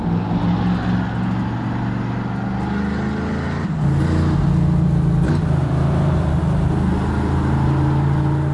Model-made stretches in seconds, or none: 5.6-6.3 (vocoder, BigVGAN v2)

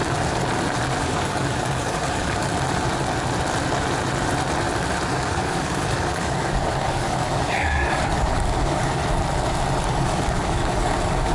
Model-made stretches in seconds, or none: 1.0-2.5 (codec, DAC); 5.1-9.0; 9.8-11.3